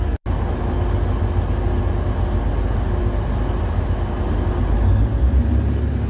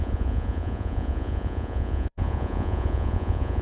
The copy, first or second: second